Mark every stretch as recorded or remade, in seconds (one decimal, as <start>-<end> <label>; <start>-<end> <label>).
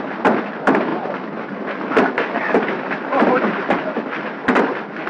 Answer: 0.0-5.1 remade